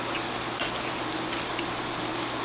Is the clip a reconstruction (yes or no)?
no